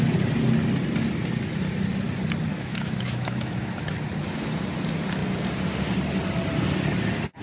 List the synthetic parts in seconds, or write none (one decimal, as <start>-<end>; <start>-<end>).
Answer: 2.5-3.8